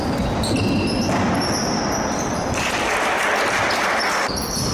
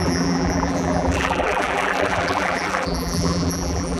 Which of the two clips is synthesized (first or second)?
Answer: second